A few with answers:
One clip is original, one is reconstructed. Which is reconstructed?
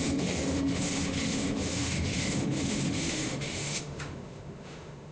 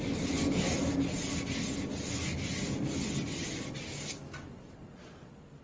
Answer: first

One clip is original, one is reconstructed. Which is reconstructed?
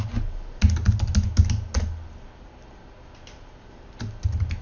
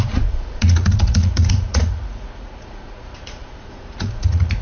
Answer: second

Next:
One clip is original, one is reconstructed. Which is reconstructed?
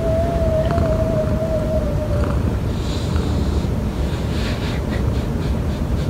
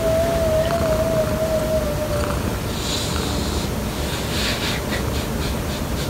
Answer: first